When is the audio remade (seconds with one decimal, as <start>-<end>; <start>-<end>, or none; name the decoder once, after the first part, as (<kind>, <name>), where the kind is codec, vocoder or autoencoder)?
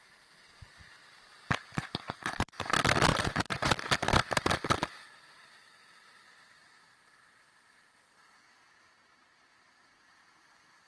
1.8-2.7 (vocoder, Vocos); 3.1-3.7